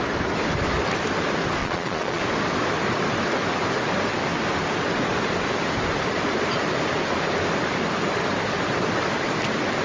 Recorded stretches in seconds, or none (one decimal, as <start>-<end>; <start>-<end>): 0.0-1.6; 2.2-9.8